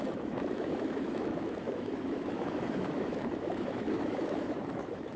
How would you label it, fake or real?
fake